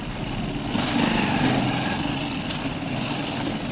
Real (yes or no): yes